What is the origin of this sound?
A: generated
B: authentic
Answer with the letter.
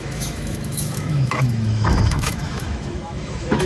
A